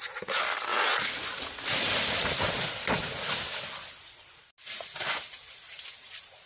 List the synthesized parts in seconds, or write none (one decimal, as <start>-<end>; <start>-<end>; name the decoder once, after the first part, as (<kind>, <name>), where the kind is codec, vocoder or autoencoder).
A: none